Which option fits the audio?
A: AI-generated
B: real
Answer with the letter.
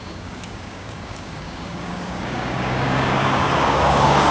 A